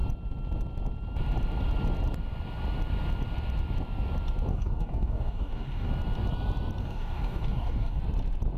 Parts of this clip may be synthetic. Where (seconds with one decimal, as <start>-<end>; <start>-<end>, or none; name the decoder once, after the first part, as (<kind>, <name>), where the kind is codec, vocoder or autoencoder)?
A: 4.5-5.9 (codec, DAC); 6.8-8.0